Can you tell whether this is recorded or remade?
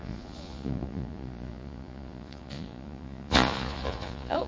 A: remade